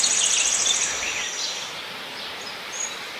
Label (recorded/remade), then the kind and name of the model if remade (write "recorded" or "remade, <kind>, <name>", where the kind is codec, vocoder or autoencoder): recorded